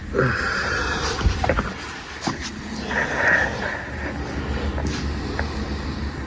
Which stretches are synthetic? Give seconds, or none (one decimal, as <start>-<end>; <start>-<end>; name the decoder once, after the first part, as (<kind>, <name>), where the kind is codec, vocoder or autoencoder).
0.0-2.5 (vocoder, BigVGAN v2)

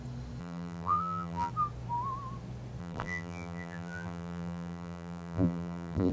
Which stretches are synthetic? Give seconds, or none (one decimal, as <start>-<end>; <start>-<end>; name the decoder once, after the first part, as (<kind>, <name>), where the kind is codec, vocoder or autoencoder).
0.4-1.5 (vocoder, BigVGAN v2); 2.8-6.1